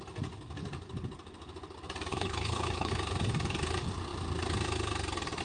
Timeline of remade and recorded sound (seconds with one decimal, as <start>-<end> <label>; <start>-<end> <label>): 0.0-2.1 recorded; 2.1-2.9 remade; 2.9-5.4 recorded